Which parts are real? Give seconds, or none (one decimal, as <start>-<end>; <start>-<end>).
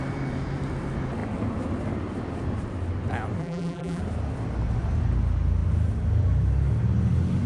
0.0-3.4; 4.0-7.5